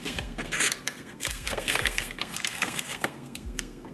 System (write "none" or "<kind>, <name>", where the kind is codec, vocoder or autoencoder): codec, SNAC